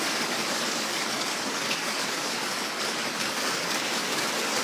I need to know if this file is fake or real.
fake